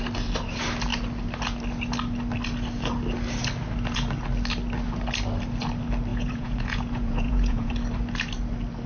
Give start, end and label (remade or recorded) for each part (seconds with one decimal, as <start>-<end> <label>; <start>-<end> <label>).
0.0-6.1 recorded; 6.1-7.7 remade; 7.7-8.9 recorded